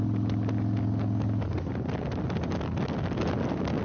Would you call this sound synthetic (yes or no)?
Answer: no